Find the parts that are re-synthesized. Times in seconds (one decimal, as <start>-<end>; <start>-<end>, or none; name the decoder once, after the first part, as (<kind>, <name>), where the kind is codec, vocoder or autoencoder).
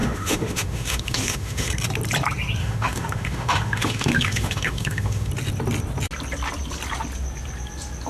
0.0-1.7 (autoencoder, DAC-VAE); 2.6-5.3